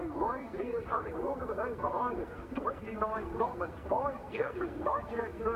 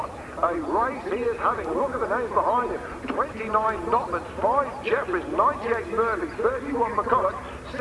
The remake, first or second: first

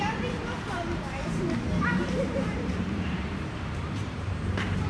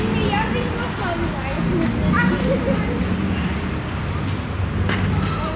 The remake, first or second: first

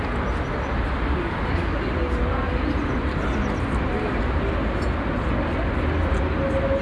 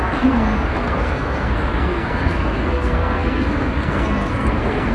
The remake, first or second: second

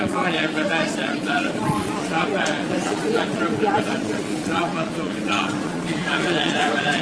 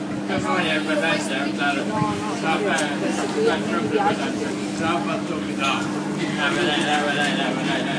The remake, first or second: first